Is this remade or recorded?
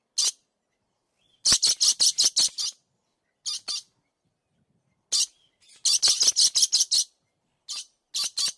recorded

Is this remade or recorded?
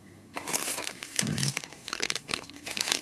remade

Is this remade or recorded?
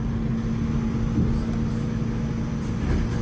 recorded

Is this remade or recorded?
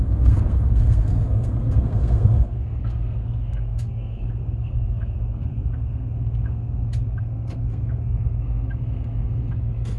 remade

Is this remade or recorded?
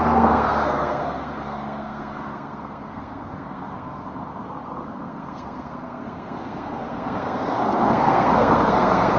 remade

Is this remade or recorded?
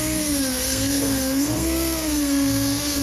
remade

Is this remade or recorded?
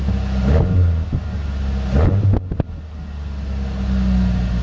recorded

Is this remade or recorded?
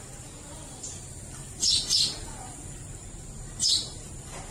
recorded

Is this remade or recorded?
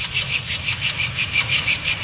recorded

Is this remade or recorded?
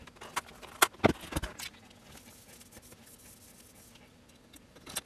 recorded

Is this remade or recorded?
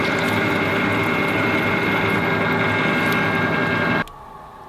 recorded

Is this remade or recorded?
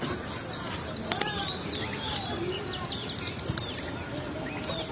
recorded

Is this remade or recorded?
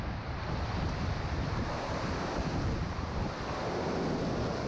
recorded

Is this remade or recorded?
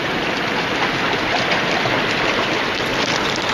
recorded